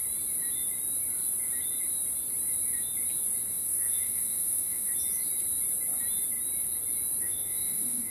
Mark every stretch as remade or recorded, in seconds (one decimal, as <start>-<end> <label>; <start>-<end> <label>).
0.0-3.5 recorded; 3.5-4.9 remade; 4.9-7.2 recorded; 7.2-8.1 remade